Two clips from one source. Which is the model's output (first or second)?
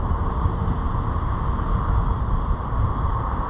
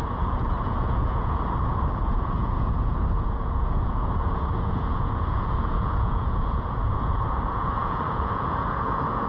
second